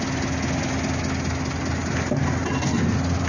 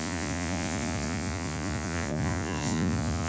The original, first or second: first